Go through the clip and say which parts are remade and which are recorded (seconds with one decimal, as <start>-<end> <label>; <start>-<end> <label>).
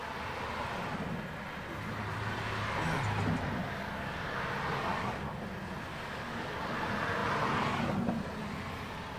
0.0-3.6 recorded; 3.6-4.4 remade; 4.4-4.9 recorded; 4.9-5.4 remade; 5.4-5.9 recorded; 5.9-6.8 remade; 6.8-9.2 recorded